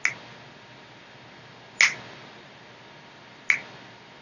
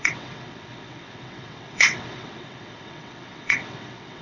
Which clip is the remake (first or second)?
second